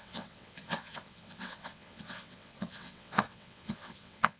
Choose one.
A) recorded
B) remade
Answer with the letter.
B